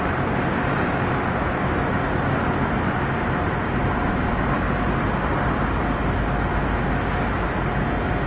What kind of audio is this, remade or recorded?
recorded